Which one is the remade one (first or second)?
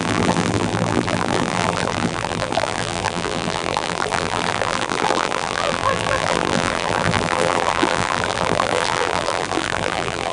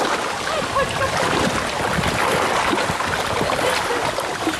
first